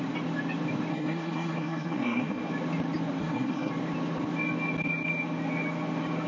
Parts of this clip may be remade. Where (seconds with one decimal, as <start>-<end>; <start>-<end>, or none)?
0.9-2.5; 3.2-3.7